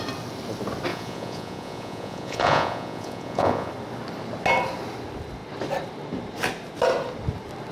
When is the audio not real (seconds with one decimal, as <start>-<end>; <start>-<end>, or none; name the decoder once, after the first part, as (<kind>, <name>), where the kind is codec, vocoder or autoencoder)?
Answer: 0.9-3.7 (vocoder, Vocos)